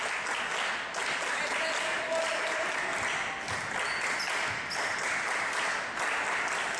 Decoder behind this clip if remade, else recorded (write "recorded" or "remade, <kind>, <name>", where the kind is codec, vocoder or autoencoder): recorded